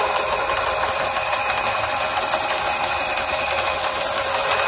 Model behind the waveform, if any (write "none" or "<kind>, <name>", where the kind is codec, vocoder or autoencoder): none